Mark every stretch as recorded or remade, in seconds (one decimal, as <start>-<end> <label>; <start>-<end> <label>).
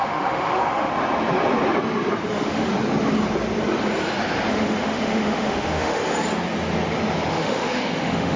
0.0-0.9 remade; 0.9-2.3 recorded; 2.3-2.7 remade; 2.7-4.5 recorded; 4.5-6.0 remade; 6.0-7.3 recorded; 7.3-8.4 remade